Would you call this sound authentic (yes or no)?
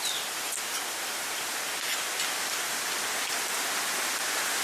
yes